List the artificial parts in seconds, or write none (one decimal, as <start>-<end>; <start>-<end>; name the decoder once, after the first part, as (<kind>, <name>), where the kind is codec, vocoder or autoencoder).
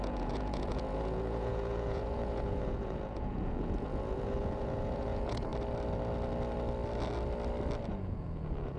0.0-5.5 (vocoder, Vocos); 7.9-8.8